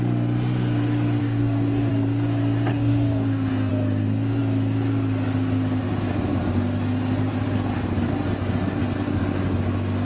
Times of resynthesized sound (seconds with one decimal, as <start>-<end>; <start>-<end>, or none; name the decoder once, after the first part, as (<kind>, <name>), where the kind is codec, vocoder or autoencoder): 1.2-1.9 (codec, DAC); 2.7-3.7